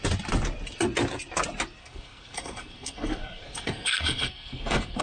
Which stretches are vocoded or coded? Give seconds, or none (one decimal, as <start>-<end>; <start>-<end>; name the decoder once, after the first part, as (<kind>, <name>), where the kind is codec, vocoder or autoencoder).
1.8-5.0 (codec, SNAC)